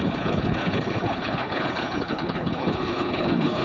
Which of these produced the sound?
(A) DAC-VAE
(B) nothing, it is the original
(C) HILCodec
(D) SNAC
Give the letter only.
C